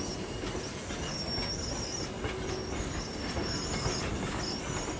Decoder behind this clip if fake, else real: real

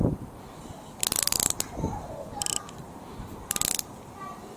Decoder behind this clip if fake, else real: fake, vocoder, BigVGAN v2